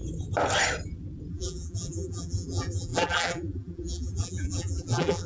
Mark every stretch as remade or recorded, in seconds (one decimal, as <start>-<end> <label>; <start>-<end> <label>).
0.0-1.3 recorded; 1.3-5.3 remade

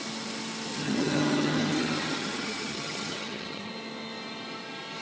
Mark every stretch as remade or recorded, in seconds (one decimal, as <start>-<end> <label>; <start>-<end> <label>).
0.0-0.7 recorded; 0.7-3.7 remade; 3.7-5.0 recorded

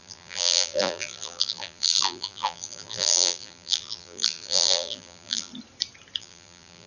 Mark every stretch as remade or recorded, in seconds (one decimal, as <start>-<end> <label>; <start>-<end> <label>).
0.0-5.5 remade; 5.5-6.2 recorded; 6.2-6.9 remade

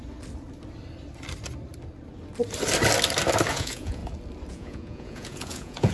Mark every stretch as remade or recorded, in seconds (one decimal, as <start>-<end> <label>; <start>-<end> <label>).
0.0-3.5 recorded; 3.5-4.0 remade; 4.0-4.5 recorded; 4.5-5.9 remade